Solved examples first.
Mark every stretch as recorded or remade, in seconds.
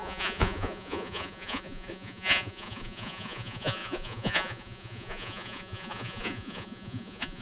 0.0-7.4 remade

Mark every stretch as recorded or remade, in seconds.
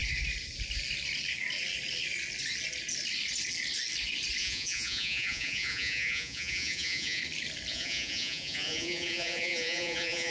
0.0-4.4 recorded; 4.4-7.2 remade; 7.2-7.7 recorded; 7.7-10.3 remade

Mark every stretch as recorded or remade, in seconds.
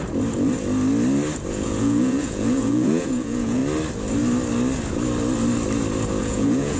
0.0-1.5 recorded; 1.5-3.6 remade; 3.6-6.2 recorded; 6.2-6.8 remade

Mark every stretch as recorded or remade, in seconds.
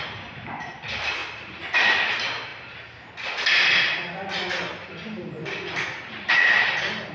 0.0-7.1 recorded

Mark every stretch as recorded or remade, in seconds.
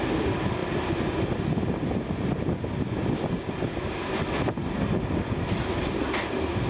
0.0-6.7 recorded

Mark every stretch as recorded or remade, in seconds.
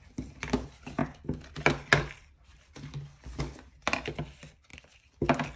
0.0-5.6 recorded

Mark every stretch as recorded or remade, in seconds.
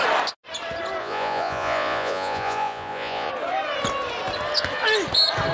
0.0-1.0 recorded; 1.0-3.3 remade; 3.3-5.5 recorded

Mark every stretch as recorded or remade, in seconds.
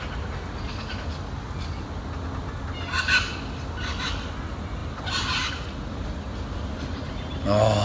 0.0-7.8 recorded